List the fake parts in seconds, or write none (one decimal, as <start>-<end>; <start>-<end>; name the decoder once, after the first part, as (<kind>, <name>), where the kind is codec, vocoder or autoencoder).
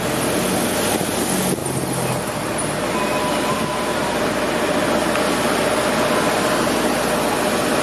none